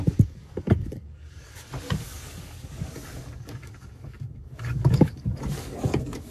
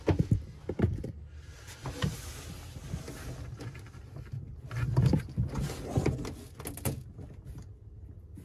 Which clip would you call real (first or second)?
second